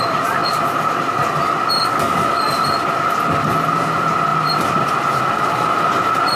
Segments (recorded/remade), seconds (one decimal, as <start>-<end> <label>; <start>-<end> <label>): 0.0-1.8 recorded; 1.8-2.4 remade; 2.4-6.4 recorded